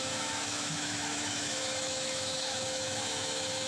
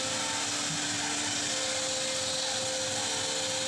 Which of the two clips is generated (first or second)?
first